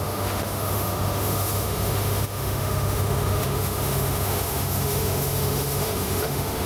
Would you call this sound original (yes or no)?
no